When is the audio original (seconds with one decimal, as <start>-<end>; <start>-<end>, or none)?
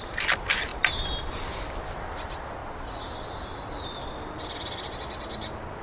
0.0-5.8